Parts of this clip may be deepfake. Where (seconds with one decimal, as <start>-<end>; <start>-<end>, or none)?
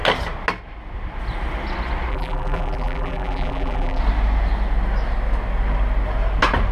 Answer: 2.1-4.0